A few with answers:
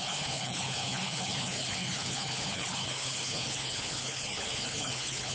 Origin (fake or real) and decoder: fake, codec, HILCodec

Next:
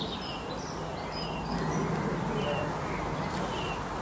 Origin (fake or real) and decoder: real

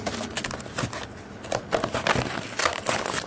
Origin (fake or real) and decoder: real